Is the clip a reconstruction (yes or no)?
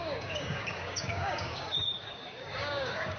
yes